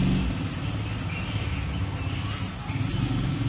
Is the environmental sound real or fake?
real